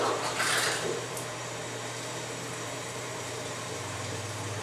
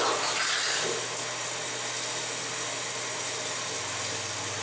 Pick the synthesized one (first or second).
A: first